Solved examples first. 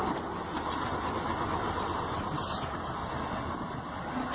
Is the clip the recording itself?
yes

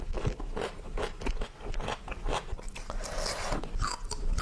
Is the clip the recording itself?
yes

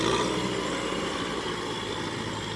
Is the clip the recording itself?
yes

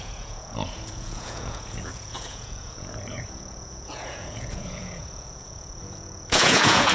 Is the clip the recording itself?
no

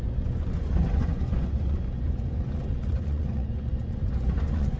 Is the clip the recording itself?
no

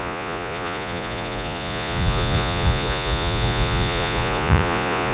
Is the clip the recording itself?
no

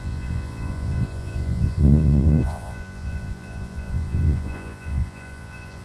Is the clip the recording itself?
no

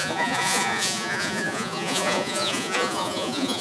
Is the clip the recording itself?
no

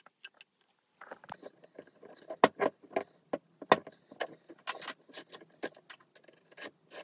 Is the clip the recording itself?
yes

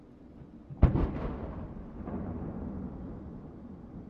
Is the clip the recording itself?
yes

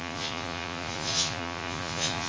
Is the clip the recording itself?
no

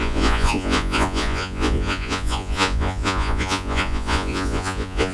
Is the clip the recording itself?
no